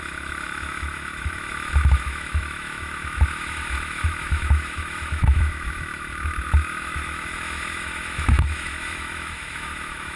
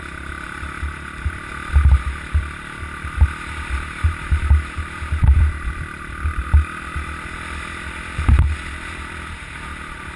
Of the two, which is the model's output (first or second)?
first